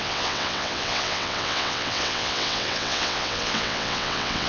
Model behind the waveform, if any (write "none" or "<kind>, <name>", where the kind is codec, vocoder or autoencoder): vocoder, WaveNeXt